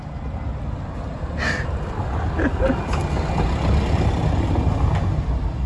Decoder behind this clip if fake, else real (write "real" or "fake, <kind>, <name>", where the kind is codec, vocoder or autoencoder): real